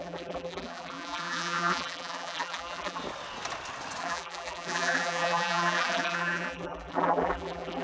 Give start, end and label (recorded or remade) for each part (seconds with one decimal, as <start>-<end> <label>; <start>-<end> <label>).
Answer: 0.0-3.0 remade; 3.0-4.0 recorded; 4.0-7.8 remade